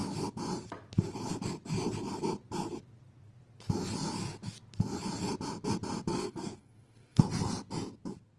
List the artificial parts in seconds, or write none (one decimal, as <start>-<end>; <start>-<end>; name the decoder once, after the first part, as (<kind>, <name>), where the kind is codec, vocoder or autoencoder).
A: 6.1-7.2 (codec, SNAC)